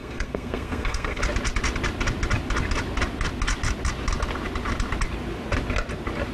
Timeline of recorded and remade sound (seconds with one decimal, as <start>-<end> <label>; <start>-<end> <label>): 0.0-1.2 remade; 1.2-6.3 recorded